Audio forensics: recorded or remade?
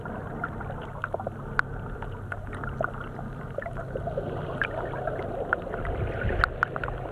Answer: recorded